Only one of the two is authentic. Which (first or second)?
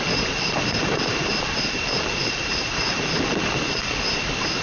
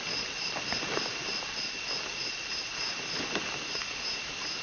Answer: second